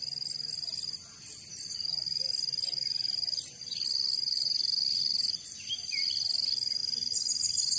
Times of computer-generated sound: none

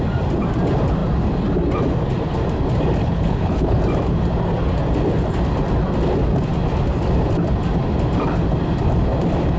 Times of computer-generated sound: 3.0-3.8 (codec, HILCodec)

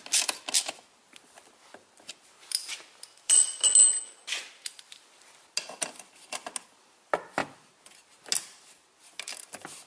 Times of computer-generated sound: none

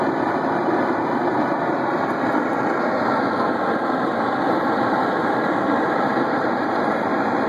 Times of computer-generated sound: 0.0-2.4 (vocoder, BigVGAN v2); 4.6-7.5

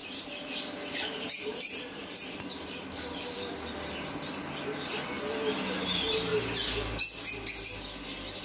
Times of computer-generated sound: 0.0-3.5 (vocoder, BigVGAN v2)

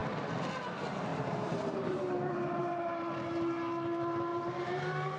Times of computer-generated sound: 1.1-2.0 (vocoder, BigVGAN v2); 2.6-3.2; 4.3-5.2

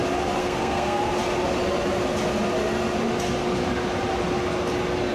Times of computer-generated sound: 0.4-1.0 (codec, SNAC)